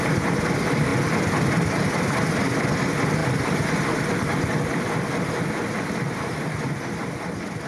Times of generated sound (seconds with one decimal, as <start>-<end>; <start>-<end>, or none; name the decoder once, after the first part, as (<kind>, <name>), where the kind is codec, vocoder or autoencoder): none